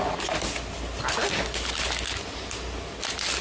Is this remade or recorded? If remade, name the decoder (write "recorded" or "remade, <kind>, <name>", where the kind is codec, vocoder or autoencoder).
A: recorded